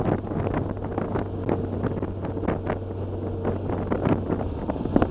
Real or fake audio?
real